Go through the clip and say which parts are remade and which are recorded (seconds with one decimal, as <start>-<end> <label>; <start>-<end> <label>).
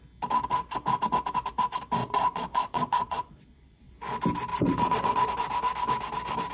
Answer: 0.0-2.0 recorded; 2.0-3.9 remade; 3.9-4.5 recorded; 4.5-5.3 remade; 5.3-6.5 recorded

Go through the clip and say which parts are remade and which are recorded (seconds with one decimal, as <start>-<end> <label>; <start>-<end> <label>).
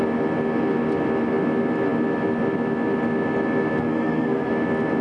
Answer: 0.0-3.8 recorded; 3.8-4.5 remade; 4.5-5.0 recorded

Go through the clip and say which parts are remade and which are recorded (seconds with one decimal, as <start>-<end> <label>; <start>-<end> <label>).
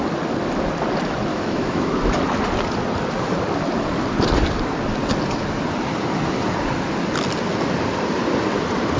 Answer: 0.0-1.3 recorded; 1.3-2.1 remade; 2.1-9.0 recorded